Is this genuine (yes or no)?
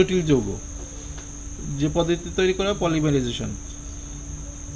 yes